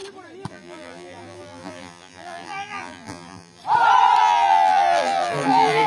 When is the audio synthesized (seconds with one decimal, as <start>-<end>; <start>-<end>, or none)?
0.5-3.6; 4.2-5.9